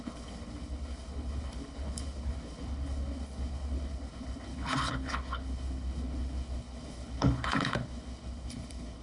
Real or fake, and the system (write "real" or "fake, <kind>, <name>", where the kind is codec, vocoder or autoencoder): fake, codec, HILCodec